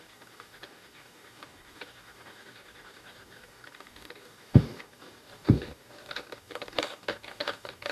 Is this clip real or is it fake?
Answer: fake